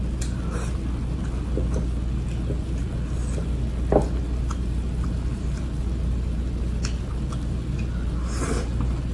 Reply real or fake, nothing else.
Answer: real